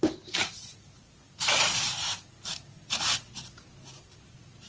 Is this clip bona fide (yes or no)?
no